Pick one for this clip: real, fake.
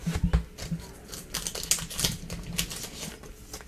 real